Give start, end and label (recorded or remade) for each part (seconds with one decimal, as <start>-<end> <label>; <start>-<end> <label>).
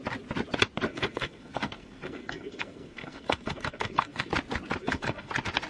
0.0-0.9 recorded; 0.9-4.3 remade; 4.3-4.8 recorded; 4.8-5.3 remade; 5.3-5.7 recorded